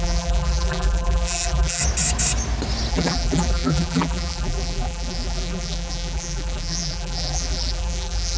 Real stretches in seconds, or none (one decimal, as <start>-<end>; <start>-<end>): 1.8-2.9